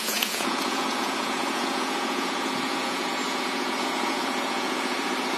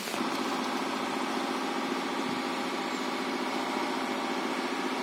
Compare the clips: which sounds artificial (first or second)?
first